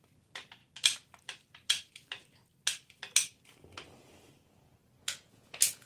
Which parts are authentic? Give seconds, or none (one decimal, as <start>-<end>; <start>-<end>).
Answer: 0.0-5.0